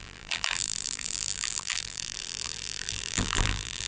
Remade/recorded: remade